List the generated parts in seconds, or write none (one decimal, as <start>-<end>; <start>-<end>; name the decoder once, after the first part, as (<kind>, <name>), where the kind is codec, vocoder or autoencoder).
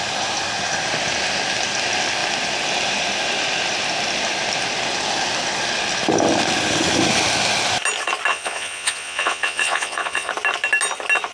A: 8.3-10.3 (vocoder, Vocos)